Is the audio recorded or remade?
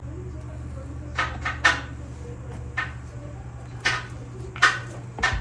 recorded